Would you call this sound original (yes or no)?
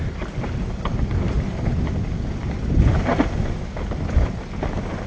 yes